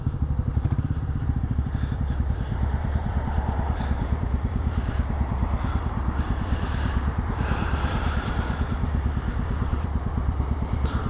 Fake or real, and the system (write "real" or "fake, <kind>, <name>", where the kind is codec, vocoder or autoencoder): fake, vocoder, BigVGAN v2